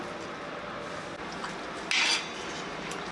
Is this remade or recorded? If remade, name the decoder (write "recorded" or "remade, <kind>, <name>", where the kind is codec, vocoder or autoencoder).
recorded